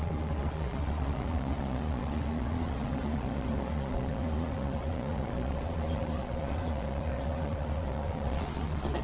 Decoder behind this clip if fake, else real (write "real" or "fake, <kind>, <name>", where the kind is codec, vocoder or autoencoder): fake, vocoder, Vocos